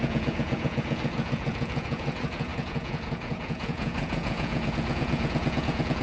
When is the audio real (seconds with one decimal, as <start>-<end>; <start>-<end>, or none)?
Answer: none